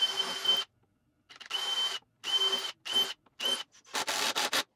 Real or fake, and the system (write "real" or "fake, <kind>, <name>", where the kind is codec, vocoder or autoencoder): real